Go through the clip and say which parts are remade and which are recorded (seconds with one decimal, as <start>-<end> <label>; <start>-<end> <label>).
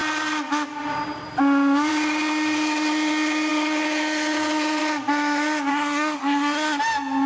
0.0-5.7 recorded; 5.7-6.8 remade; 6.8-7.3 recorded